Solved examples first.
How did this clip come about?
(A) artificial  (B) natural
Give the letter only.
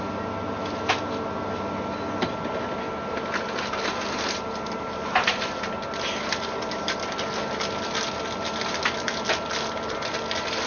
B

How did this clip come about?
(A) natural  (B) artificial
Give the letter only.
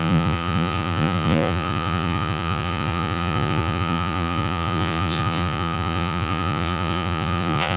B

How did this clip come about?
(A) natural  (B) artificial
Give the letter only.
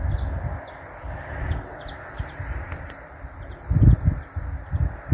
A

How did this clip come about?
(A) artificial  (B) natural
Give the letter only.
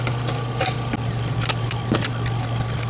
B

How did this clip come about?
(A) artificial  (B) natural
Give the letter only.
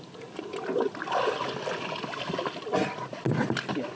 B